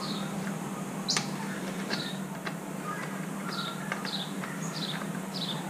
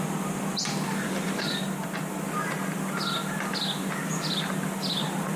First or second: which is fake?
first